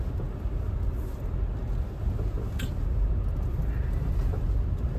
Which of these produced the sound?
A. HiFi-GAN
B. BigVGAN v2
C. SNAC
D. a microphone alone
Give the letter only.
D